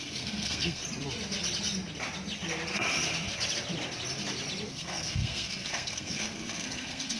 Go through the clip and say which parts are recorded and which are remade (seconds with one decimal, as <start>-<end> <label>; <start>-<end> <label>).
0.0-0.8 remade; 0.8-4.7 recorded; 4.7-7.2 remade